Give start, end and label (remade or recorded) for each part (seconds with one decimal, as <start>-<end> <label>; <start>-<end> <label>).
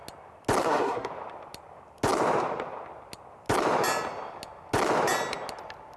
0.0-0.6 recorded; 0.6-1.1 remade; 1.1-6.0 recorded